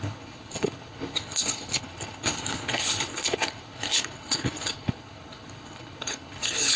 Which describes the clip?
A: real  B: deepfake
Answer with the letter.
B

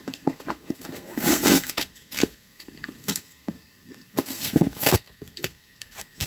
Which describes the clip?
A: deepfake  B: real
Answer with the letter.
A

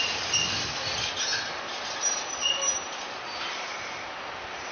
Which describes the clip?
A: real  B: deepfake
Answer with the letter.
A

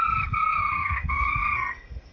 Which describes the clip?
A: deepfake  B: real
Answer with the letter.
A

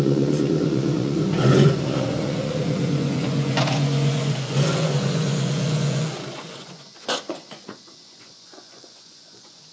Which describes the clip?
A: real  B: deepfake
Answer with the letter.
B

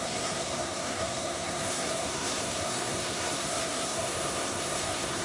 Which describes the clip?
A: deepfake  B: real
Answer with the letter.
A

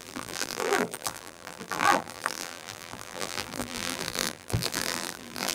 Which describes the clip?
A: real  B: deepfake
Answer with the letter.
B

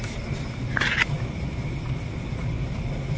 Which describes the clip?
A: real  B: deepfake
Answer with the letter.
A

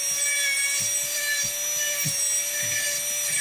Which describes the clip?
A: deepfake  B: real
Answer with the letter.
B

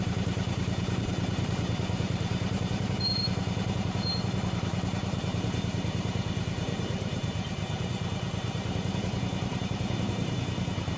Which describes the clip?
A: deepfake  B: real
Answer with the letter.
A